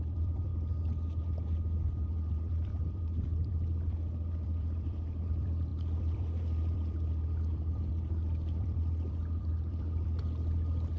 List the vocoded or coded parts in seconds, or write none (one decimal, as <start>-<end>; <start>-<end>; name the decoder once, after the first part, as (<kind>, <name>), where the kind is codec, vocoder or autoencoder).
0.0-0.5 (vocoder, BigVGAN v2); 2.3-11.0